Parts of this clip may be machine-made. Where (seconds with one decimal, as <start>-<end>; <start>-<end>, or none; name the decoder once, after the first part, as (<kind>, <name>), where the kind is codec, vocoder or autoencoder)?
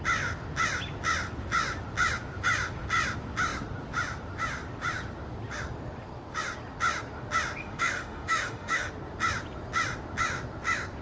7.6-8.9 (autoencoder, DAC-VAE)